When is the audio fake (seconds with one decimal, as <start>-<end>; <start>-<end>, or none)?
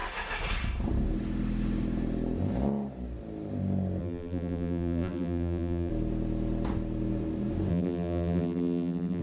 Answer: 4.0-5.9; 7.7-9.2